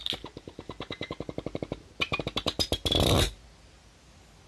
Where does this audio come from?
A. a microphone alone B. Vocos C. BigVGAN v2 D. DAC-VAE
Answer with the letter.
A